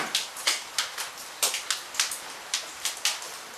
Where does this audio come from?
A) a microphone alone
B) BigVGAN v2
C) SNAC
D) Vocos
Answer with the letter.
A